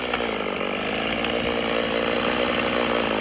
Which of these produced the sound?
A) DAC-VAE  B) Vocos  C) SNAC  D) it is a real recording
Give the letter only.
D